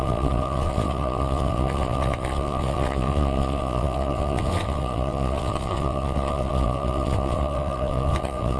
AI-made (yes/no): yes